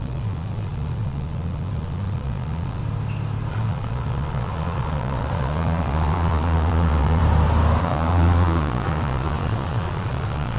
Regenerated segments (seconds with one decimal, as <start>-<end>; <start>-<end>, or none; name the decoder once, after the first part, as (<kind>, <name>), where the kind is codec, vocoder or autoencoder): 0.0-2.8 (vocoder, Vocos); 3.5-7.2; 7.8-10.6